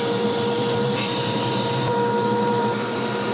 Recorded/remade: remade